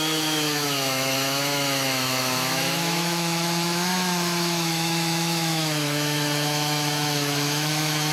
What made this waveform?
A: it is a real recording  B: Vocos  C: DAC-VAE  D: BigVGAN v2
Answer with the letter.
C